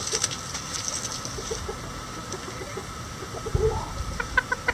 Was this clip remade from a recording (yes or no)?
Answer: no